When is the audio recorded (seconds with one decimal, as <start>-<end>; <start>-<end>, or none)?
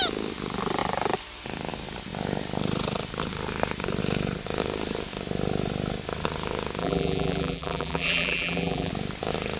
0.0-6.8; 8.9-9.6